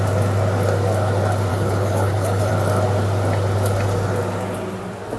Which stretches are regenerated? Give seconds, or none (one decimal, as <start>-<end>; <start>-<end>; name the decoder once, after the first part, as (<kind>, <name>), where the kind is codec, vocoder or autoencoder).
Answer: 1.5-2.5 (codec, HILCodec)